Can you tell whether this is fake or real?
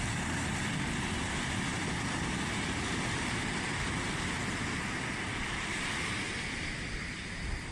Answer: real